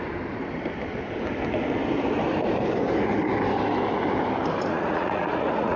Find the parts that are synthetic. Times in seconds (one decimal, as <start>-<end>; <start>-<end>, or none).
4.7-5.8